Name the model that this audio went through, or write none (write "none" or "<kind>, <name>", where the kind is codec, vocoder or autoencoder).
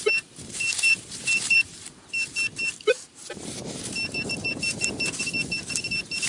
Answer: vocoder, BigVGAN v2